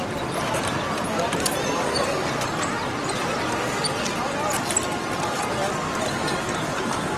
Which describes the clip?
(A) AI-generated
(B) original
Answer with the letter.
B